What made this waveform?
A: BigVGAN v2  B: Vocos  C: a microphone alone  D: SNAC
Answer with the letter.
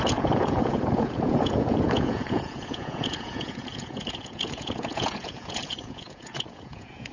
B